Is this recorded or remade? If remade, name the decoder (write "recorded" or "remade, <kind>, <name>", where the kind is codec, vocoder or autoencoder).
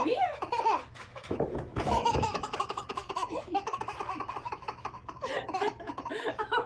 remade, autoencoder, DAC-VAE